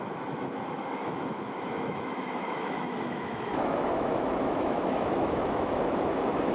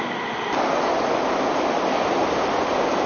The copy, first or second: first